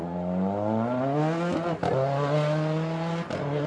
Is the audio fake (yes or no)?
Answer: no